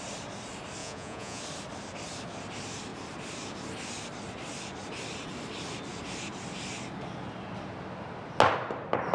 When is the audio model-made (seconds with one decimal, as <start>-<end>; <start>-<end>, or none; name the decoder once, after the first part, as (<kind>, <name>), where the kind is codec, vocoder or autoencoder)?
0.8-1.4 (vocoder, Vocos)